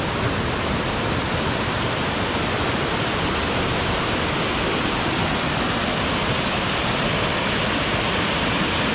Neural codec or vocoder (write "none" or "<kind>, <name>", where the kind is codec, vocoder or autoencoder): none